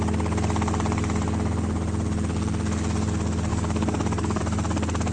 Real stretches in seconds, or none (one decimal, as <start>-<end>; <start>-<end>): 0.0-3.5; 4.4-5.1